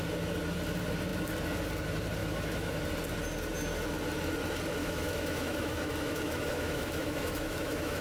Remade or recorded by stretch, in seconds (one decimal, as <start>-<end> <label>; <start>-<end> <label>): 0.0-2.2 recorded; 2.2-2.8 remade; 2.8-4.8 recorded; 4.8-8.0 remade